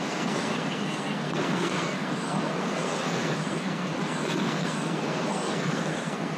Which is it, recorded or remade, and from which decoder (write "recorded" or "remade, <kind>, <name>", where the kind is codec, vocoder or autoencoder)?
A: remade, codec, SNAC